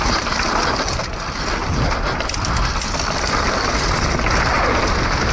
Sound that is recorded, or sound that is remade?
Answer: recorded